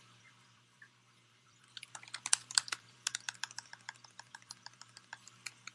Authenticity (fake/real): fake